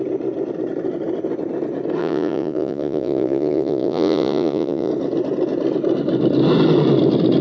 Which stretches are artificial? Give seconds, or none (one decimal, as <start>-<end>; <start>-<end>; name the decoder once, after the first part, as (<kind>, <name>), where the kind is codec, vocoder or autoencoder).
2.0-4.9 (vocoder, Vocos)